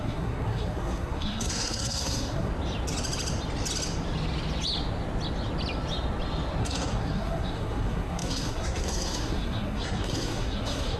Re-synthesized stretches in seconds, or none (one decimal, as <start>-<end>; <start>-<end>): 0.0-2.5; 6.6-11.0